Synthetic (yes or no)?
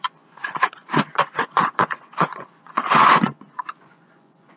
yes